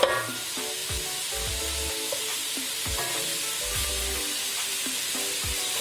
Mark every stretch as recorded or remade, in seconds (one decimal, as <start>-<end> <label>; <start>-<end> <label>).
0.0-0.8 remade; 0.8-1.9 recorded; 1.9-3.3 remade; 3.3-3.9 recorded; 3.9-4.7 remade; 4.7-5.8 recorded